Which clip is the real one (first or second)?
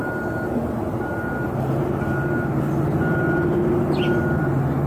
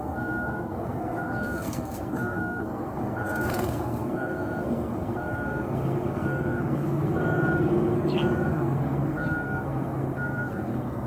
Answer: first